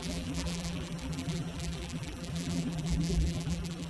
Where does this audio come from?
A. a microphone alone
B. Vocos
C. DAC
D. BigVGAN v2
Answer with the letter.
D